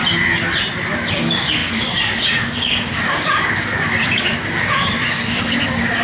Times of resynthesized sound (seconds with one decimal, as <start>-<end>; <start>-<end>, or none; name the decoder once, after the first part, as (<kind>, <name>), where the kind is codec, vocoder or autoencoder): 1.1-6.0 (codec, DAC)